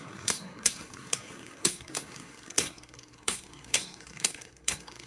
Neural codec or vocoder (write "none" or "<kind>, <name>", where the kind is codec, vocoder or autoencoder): codec, SNAC